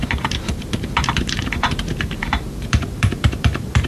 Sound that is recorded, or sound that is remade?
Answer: remade